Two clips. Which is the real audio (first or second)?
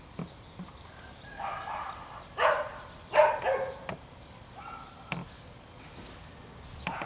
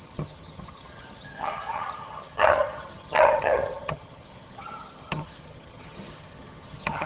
first